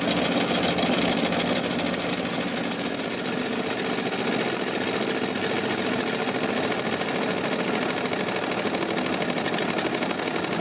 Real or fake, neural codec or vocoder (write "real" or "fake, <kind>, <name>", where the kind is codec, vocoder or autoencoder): real